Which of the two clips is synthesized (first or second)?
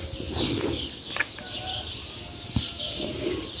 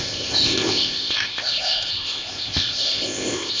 second